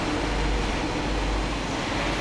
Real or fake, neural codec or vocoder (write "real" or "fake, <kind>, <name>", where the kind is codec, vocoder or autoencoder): real